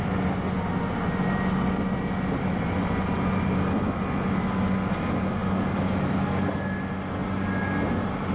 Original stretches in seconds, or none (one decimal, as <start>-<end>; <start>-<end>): 0.0-8.3